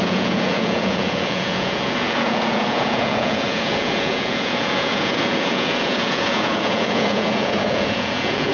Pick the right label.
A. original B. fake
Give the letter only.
B